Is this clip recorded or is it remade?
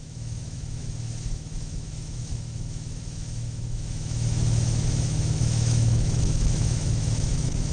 remade